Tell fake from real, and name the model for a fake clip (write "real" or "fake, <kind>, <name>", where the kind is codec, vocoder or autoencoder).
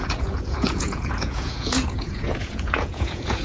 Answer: fake, vocoder, Vocos